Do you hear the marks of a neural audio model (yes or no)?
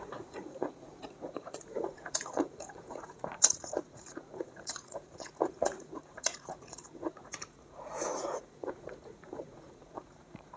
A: yes